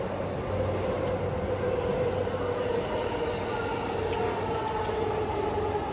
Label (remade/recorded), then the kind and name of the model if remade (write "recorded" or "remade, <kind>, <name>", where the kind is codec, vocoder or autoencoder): recorded